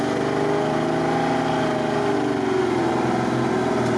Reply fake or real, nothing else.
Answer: real